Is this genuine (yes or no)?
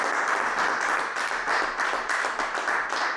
yes